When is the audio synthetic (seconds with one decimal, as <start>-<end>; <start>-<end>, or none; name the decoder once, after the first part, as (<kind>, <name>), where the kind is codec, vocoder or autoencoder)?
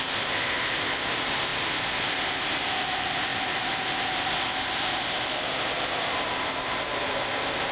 none